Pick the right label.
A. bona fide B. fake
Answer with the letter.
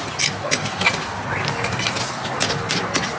A